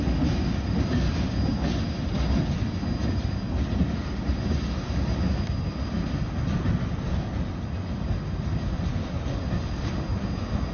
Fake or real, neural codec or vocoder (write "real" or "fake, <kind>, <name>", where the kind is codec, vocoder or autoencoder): real